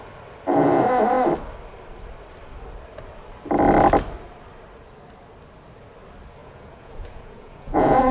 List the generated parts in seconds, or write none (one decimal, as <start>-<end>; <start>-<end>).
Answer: 6.4-8.1